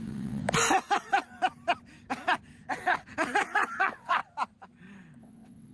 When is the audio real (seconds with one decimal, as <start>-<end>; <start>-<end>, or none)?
0.4-3.8; 4.2-5.2